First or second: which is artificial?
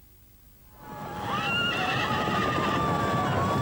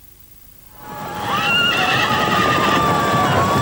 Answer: second